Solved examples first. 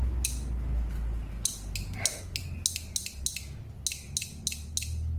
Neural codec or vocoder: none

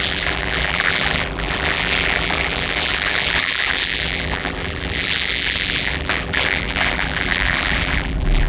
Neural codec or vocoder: vocoder, BigVGAN v2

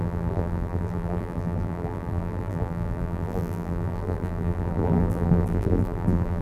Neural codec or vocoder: vocoder, BigVGAN v2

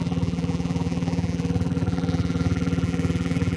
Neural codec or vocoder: vocoder, BigVGAN v2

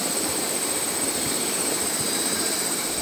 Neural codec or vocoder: vocoder, BigVGAN v2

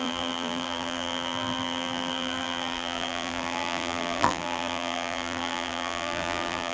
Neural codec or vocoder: vocoder, BigVGAN v2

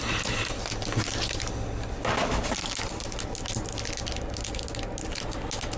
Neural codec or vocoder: none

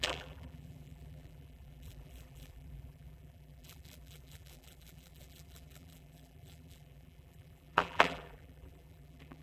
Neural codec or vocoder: vocoder, BigVGAN v2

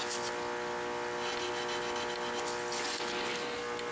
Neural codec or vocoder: none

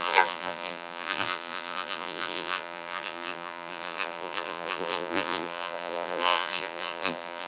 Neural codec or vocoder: vocoder, BigVGAN v2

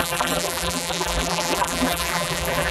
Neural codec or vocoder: vocoder, BigVGAN v2